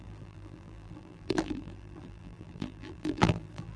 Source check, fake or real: fake